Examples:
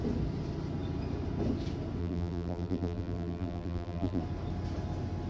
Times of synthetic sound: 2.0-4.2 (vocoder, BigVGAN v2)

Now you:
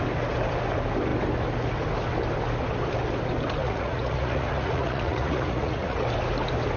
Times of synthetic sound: 3.6-6.0 (vocoder, Vocos)

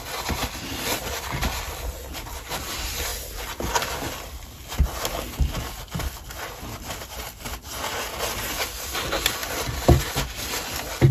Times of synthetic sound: 9.4-10.0 (vocoder, BigVGAN v2)

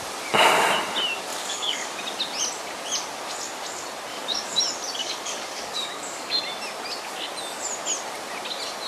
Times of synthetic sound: 1.3-2.0 (codec, DAC); 4.1-4.6; 5.0-6.4

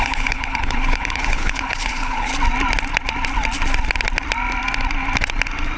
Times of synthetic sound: 0.0-2.3 (codec, HILCodec)

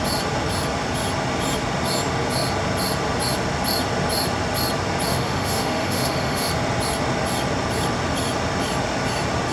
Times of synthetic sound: 5.1-6.5 (autoencoder, DAC-VAE)